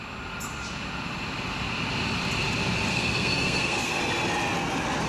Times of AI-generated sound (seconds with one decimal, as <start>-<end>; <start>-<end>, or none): 2.9-4.0